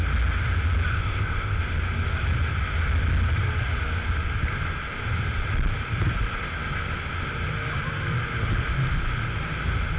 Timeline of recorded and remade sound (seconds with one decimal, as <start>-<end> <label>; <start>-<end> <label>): 0.0-0.9 recorded; 0.9-1.6 remade; 1.6-10.0 recorded